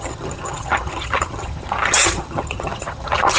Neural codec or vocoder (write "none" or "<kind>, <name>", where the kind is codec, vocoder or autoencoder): vocoder, HiFi-GAN